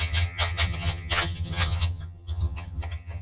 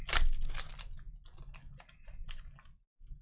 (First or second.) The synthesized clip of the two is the first